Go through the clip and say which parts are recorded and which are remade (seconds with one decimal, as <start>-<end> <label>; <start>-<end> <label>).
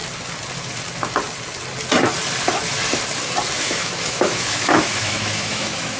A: 0.0-3.6 recorded; 3.6-6.0 remade